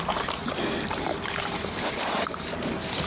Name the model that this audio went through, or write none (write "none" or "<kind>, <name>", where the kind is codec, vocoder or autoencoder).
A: none